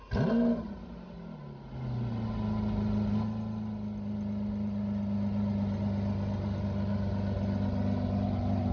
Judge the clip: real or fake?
real